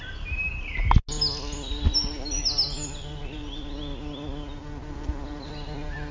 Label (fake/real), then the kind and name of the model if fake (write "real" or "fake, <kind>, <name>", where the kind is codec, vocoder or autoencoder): real